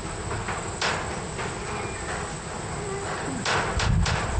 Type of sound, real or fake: real